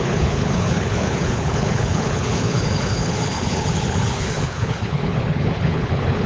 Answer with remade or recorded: remade